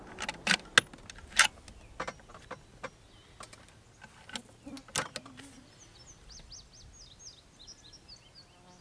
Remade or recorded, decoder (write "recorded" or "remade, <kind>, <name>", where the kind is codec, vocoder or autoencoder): recorded